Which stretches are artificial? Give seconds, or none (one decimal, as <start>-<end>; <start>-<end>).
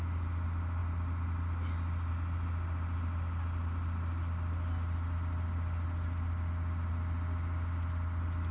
none